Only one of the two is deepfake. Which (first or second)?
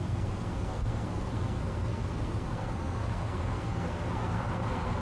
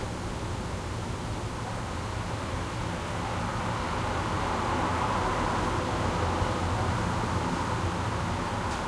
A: first